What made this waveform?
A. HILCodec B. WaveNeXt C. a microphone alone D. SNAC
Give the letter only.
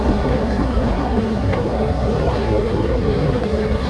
D